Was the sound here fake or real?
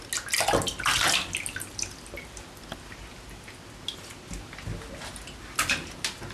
real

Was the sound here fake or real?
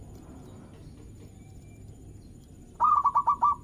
real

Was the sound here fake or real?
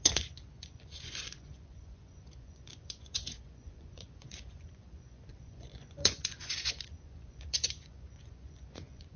fake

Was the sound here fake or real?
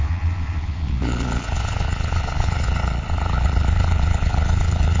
fake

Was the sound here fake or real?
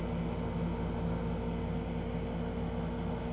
real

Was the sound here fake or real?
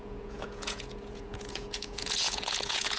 fake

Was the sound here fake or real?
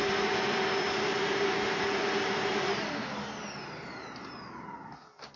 real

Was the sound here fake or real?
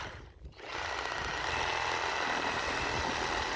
real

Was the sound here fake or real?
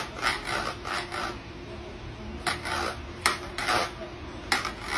real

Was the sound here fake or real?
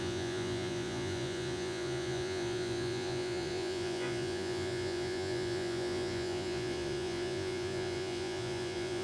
fake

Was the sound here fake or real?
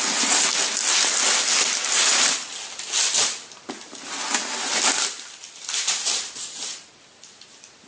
real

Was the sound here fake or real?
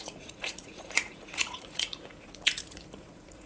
fake